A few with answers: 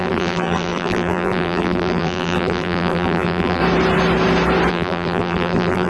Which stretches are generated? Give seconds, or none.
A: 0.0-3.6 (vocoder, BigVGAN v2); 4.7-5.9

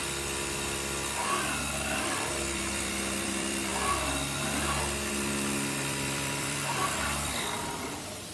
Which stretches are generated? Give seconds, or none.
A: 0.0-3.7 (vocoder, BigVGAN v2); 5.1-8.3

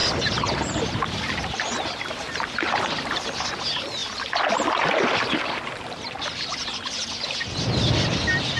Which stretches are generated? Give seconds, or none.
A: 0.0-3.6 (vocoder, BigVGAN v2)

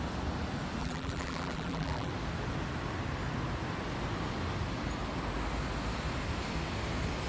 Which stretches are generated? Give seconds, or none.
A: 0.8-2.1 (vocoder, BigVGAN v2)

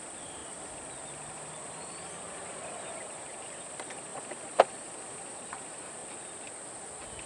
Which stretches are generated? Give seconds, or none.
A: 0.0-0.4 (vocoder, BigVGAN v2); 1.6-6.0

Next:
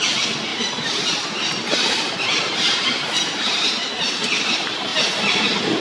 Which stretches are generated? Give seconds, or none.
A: 0.5-3.9 (vocoder, BigVGAN v2)

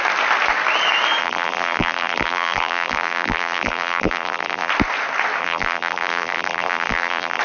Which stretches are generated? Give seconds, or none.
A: 1.2-4.7 (vocoder, BigVGAN v2); 5.4-7.4

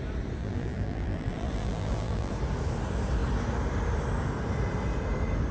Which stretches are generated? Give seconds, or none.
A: 0.4-2.3 (vocoder, BigVGAN v2)